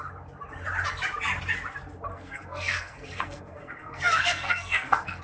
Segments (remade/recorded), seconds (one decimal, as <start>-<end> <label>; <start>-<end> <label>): 0.0-2.1 recorded; 2.1-5.2 remade

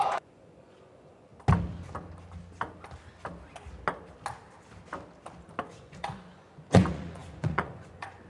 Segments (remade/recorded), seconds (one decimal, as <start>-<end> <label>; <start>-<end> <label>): 0.0-1.3 remade; 1.3-5.6 recorded; 5.6-8.3 remade

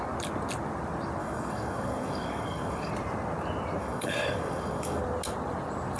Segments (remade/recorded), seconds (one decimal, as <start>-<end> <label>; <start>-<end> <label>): 0.0-1.2 recorded; 1.2-2.9 remade; 2.9-3.8 recorded; 3.8-5.0 remade; 5.0-6.0 recorded

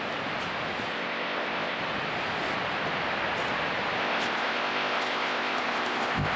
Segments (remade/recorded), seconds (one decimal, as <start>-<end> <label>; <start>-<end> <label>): 0.0-0.9 recorded; 0.9-1.8 remade; 1.8-4.0 recorded; 4.0-6.4 remade

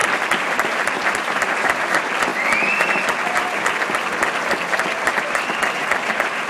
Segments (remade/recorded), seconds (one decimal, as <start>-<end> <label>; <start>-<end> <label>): 0.0-1.8 remade; 1.8-6.5 recorded

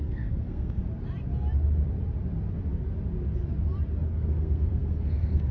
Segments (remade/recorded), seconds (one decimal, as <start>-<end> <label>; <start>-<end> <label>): 0.0-0.8 remade; 0.8-4.1 recorded; 4.1-5.5 remade